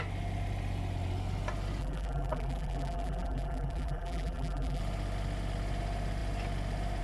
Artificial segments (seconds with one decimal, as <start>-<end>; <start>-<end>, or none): 1.8-4.8